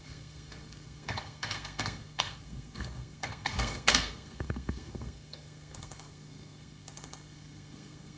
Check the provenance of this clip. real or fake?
fake